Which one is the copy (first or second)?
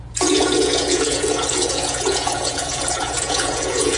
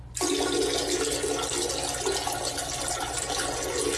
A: first